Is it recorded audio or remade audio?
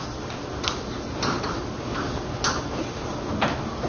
recorded